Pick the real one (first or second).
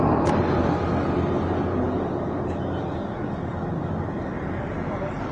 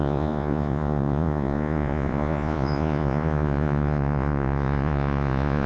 first